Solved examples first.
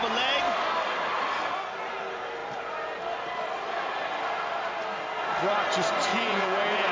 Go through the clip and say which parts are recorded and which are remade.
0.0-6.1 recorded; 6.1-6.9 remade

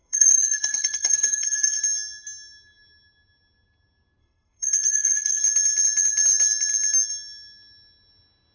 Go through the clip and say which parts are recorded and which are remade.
0.0-1.8 remade; 1.8-4.2 recorded; 4.2-5.4 remade; 5.4-8.5 recorded

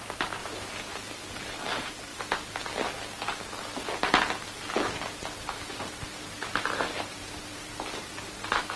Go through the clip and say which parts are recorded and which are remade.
0.0-2.1 remade; 2.1-5.8 recorded; 5.8-8.8 remade